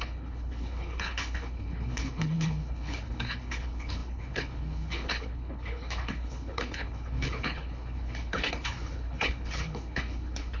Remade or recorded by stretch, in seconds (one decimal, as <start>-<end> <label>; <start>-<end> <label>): 0.0-10.6 remade